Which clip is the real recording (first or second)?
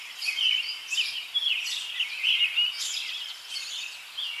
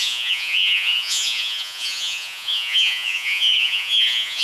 first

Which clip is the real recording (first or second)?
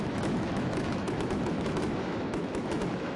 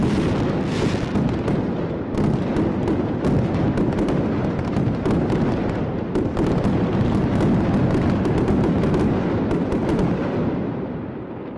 second